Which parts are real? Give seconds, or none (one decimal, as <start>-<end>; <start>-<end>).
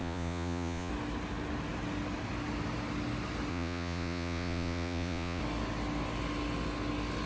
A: 0.9-3.5; 5.4-7.3